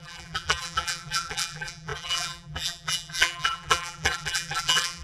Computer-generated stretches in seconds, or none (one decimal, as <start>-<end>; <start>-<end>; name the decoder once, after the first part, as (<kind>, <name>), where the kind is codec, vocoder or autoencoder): 0.0-5.0 (vocoder, BigVGAN v2)